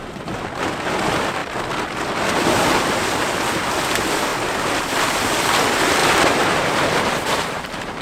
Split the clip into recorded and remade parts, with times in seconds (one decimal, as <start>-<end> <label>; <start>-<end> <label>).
0.0-6.0 recorded; 6.0-8.0 remade